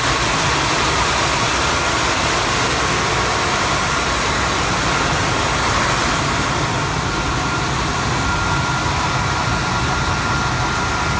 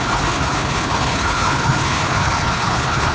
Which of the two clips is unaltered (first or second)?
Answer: first